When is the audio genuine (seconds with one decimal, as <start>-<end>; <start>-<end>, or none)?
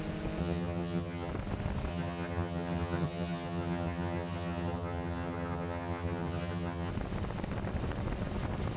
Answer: 0.0-0.4; 1.3-1.9; 6.9-8.8